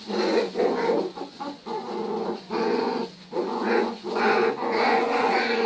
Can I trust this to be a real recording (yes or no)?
no